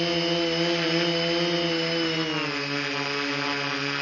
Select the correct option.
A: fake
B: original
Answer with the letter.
B